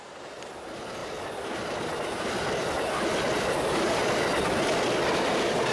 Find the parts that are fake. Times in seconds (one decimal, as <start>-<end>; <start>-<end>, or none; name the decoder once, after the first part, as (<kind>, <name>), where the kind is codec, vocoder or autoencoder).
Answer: none